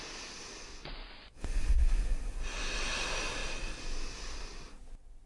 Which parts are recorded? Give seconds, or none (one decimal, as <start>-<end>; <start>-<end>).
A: 0.0-0.7; 2.2-5.3

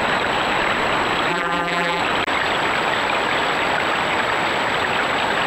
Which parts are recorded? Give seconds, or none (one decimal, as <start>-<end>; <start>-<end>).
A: 0.0-1.3; 2.0-5.5

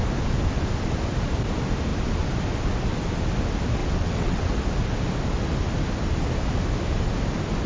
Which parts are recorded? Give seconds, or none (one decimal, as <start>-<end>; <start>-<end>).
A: 0.0-3.8; 4.5-7.7

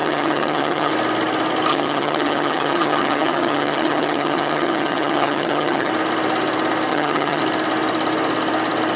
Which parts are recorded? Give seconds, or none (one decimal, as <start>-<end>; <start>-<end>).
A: 0.9-1.7; 5.9-6.9; 7.4-9.0

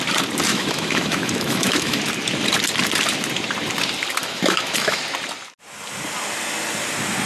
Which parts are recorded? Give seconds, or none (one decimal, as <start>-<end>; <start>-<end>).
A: 0.0-0.5; 2.0-4.2; 5.0-7.3

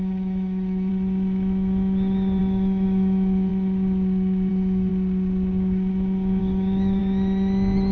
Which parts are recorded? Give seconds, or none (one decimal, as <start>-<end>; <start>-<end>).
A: 0.9-2.4; 3.5-4.5; 4.9-6.4; 7.0-7.9

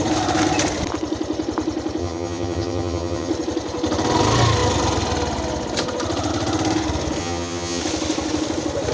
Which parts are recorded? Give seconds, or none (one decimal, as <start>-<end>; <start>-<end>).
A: 0.0-2.0; 3.3-7.2; 7.8-8.9

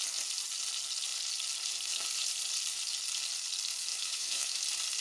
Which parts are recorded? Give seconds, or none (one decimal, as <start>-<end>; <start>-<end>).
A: 0.0-3.9; 4.6-5.0